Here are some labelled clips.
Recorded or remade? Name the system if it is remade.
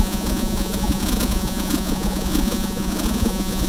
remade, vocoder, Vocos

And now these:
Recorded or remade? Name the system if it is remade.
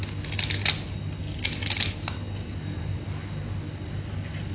recorded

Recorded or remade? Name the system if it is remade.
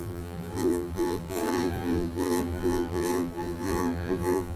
remade, vocoder, BigVGAN v2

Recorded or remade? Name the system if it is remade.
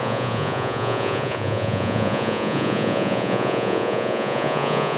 remade, vocoder, Vocos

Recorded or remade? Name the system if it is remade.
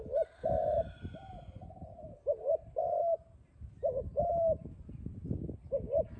recorded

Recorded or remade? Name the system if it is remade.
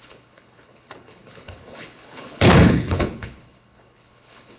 remade, codec, HILCodec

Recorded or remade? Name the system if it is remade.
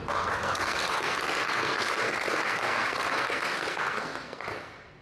remade, codec, SNAC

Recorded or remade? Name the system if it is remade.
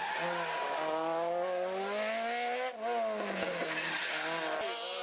recorded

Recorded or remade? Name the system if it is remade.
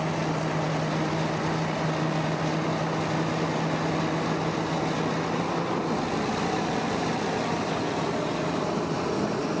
recorded